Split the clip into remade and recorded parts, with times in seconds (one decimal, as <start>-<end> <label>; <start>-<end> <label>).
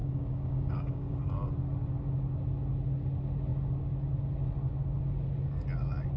0.0-1.5 remade; 1.5-6.2 recorded